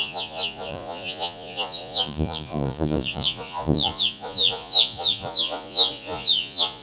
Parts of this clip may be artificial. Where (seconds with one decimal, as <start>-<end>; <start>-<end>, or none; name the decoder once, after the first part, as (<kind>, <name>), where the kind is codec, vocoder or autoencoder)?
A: 0.0-6.8 (vocoder, Vocos)